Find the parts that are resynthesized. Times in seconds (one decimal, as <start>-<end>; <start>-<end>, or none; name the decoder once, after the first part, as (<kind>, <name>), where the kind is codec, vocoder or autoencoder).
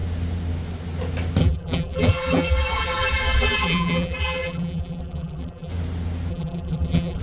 1.4-5.7 (vocoder, BigVGAN v2); 6.3-7.2